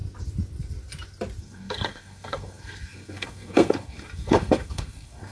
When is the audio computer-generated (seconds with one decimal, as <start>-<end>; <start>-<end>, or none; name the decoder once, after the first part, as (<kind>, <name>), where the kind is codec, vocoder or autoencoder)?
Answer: 1.4-5.3 (codec, SNAC)